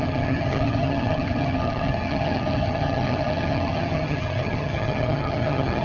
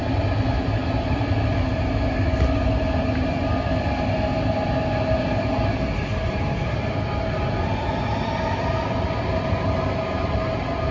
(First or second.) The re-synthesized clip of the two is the first